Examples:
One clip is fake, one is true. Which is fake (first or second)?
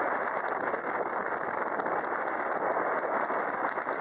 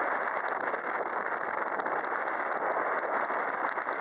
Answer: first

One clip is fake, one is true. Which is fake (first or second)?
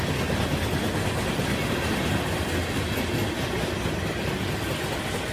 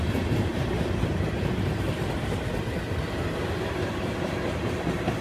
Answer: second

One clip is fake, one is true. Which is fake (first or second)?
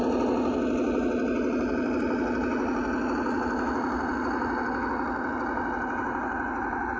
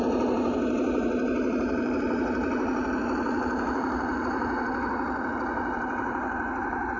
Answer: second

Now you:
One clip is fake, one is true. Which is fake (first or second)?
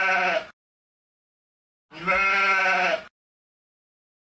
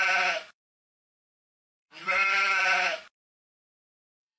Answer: second